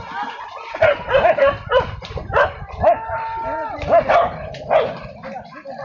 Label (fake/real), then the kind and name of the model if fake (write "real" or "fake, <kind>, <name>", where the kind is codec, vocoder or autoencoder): real